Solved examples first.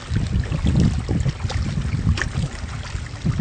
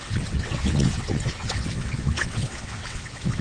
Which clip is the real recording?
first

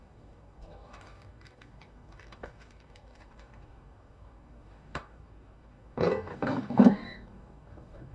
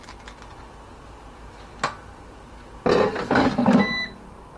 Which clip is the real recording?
second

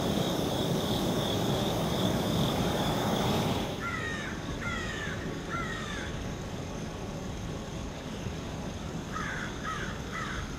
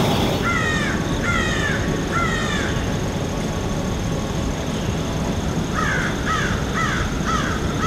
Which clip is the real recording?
second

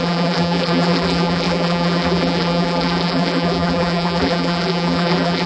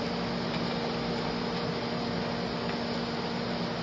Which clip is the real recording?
second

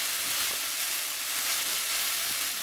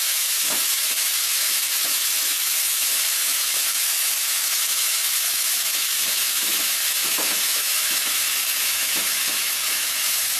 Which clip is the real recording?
first